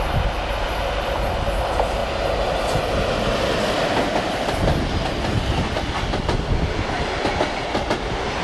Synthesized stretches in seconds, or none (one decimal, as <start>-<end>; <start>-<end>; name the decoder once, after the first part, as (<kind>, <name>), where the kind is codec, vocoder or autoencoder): none